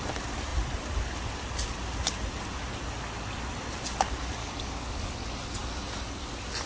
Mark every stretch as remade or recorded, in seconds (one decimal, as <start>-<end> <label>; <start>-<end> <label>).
0.0-4.4 recorded; 4.4-5.1 remade; 5.1-6.7 recorded